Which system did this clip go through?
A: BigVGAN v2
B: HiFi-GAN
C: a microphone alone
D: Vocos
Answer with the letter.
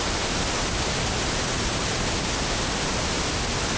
C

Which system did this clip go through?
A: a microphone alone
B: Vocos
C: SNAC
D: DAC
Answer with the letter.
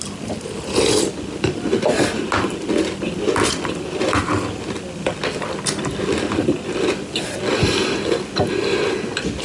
A